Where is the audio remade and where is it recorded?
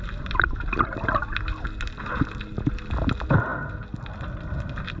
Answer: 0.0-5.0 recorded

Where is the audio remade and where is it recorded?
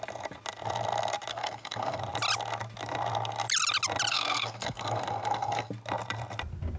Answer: 0.0-1.3 recorded; 1.3-2.0 remade; 2.0-4.1 recorded; 4.1-5.7 remade; 5.7-6.8 recorded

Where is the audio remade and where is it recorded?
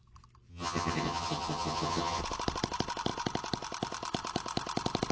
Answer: 0.0-0.5 recorded; 0.5-2.2 remade; 2.2-5.1 recorded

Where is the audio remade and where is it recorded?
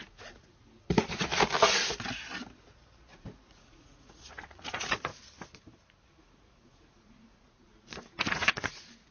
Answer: 0.0-1.3 remade; 1.3-3.1 recorded; 3.1-5.1 remade; 5.1-6.2 recorded; 6.2-7.7 remade; 7.7-8.3 recorded; 8.3-9.1 remade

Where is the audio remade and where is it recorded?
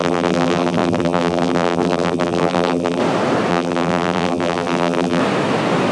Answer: 0.0-3.0 remade; 3.0-3.5 recorded; 3.5-5.2 remade; 5.2-5.9 recorded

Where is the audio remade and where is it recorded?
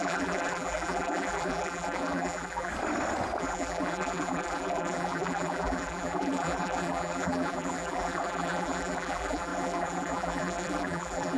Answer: 0.0-2.7 remade; 2.7-3.4 recorded; 3.4-11.4 remade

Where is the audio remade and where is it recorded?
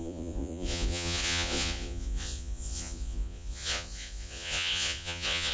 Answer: 0.0-5.5 remade